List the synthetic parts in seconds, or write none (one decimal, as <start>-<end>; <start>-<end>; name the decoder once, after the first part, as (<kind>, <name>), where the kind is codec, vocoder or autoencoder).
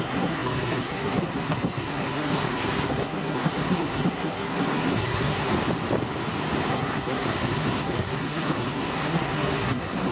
0.0-5.5 (codec, SNAC); 6.7-10.1